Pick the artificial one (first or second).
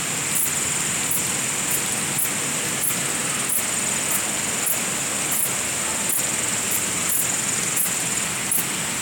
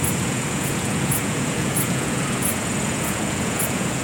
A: second